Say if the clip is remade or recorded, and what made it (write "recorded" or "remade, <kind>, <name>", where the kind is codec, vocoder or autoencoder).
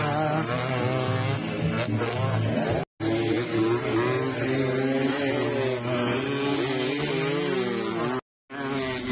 recorded